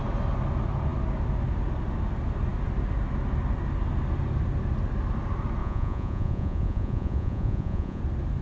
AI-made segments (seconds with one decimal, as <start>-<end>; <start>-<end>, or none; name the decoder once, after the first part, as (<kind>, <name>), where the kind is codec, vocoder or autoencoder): 5.6-8.0 (vocoder, Vocos)